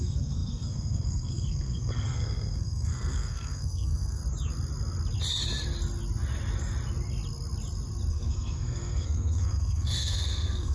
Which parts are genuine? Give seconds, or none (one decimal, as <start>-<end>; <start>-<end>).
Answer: 4.2-8.1